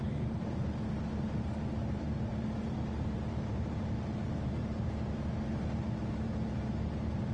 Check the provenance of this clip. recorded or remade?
remade